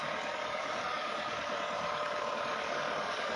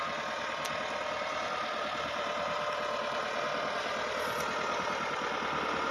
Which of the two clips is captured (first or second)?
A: second